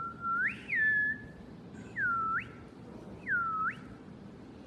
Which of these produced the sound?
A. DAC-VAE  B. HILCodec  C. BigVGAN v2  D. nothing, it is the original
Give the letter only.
D